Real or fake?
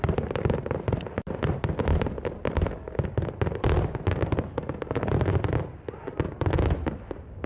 real